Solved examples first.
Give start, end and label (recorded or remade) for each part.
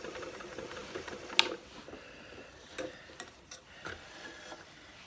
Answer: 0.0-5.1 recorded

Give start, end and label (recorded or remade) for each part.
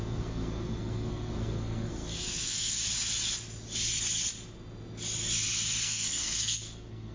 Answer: 0.0-2.8 remade; 2.8-5.8 recorded; 5.8-7.1 remade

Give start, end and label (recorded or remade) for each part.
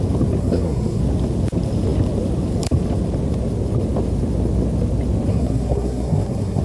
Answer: 0.0-0.4 recorded; 0.4-1.0 remade; 1.0-5.3 recorded; 5.3-6.6 remade